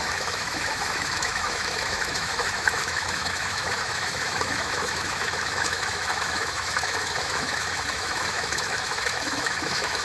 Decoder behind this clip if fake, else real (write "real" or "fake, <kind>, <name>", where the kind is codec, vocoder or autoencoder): fake, autoencoder, DAC-VAE